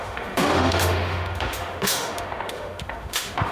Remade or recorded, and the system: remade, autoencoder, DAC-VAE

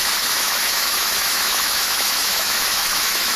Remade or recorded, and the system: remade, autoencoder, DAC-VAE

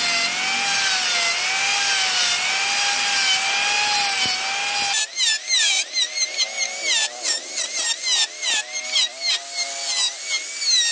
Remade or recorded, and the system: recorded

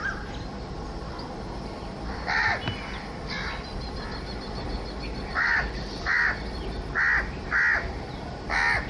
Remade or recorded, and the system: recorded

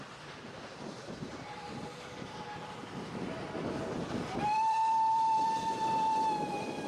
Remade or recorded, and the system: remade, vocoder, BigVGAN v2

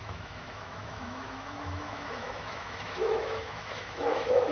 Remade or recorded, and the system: remade, autoencoder, DAC-VAE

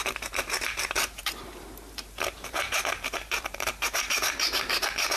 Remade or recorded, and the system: remade, vocoder, BigVGAN v2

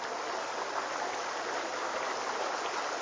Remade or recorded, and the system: recorded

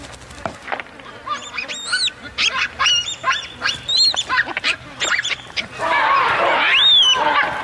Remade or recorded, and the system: recorded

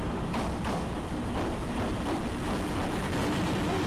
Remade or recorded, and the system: recorded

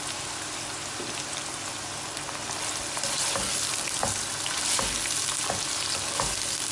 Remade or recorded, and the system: recorded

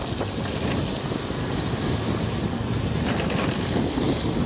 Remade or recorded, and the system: recorded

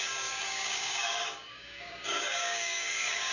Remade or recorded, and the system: remade, codec, DAC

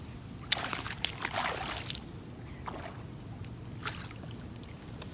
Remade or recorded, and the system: recorded